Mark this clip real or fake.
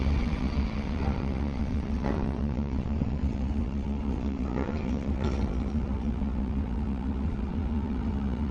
fake